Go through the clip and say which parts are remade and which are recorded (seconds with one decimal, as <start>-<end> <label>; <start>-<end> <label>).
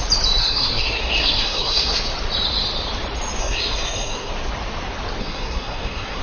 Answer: 0.0-0.4 recorded; 0.4-2.0 remade; 2.0-3.4 recorded; 3.4-4.3 remade; 4.3-5.2 recorded; 5.2-6.2 remade